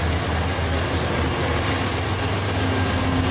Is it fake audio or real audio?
real